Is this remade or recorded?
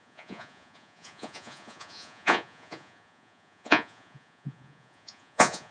remade